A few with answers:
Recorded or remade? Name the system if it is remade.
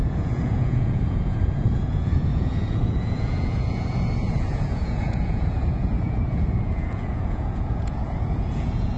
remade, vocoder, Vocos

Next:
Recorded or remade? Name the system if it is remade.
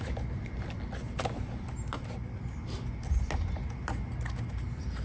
recorded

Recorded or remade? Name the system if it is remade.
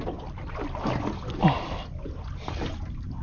recorded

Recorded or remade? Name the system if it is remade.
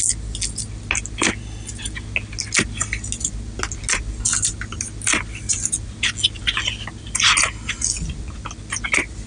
recorded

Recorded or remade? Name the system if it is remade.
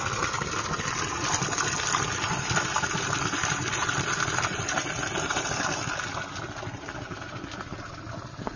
recorded